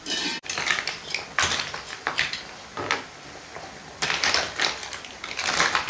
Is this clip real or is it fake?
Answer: fake